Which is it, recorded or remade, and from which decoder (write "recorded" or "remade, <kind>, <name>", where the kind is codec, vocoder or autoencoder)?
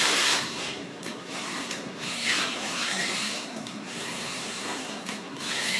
remade, codec, SNAC